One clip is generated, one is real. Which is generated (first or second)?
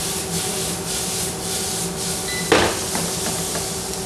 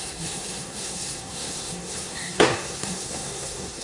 second